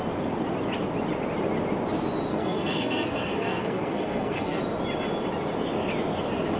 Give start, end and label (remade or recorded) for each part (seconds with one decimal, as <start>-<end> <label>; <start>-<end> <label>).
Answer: 0.0-2.3 recorded; 2.3-4.6 remade; 4.6-6.6 recorded